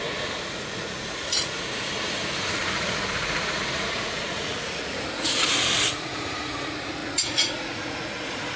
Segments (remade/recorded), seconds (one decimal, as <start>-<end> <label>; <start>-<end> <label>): 0.0-8.6 remade